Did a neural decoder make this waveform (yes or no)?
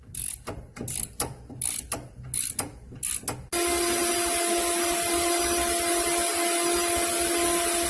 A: no